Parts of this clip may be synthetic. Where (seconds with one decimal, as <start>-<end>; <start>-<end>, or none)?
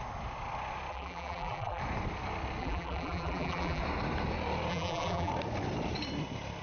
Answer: 0.9-1.8; 2.6-3.8; 4.7-5.3